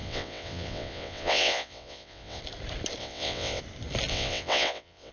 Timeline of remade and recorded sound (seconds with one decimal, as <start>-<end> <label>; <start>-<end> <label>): 0.0-2.4 remade; 2.4-3.0 recorded; 3.0-3.6 remade; 3.6-4.1 recorded; 4.1-5.1 remade